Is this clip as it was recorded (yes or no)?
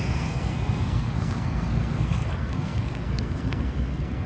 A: no